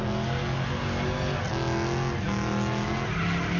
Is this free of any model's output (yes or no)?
yes